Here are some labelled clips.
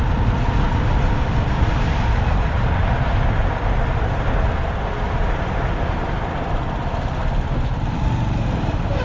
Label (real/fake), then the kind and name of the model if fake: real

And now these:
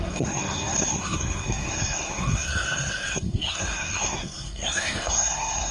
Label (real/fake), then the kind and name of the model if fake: fake, codec, SNAC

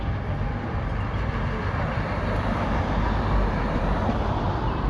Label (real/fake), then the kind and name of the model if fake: real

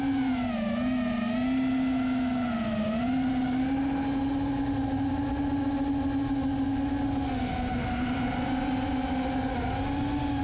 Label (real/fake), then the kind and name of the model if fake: real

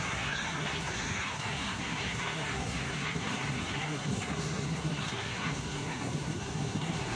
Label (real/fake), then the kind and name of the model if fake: fake, codec, SNAC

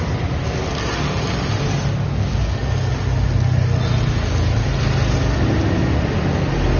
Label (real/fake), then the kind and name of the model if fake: real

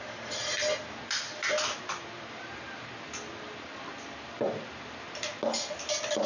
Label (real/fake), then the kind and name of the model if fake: real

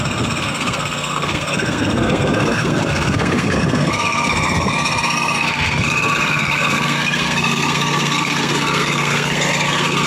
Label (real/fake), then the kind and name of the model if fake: fake, codec, SNAC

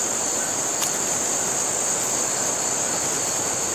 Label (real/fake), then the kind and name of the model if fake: real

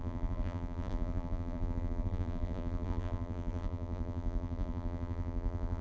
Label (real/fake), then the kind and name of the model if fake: fake, vocoder, BigVGAN v2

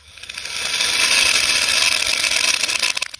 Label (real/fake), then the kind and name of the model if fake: real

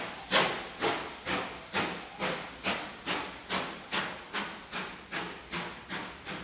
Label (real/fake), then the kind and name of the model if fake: real